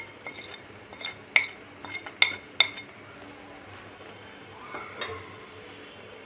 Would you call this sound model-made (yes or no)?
no